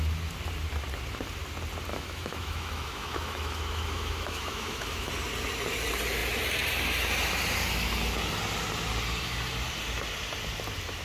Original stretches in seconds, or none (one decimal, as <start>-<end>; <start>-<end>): 0.0-1.9; 5.1-11.0